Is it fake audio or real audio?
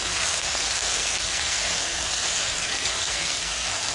fake